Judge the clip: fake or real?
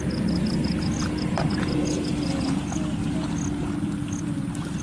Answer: real